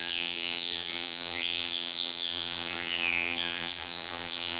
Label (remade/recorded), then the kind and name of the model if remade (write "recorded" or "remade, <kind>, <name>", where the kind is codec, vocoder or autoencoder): remade, vocoder, BigVGAN v2